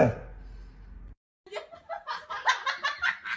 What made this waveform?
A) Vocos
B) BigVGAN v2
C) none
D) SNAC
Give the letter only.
C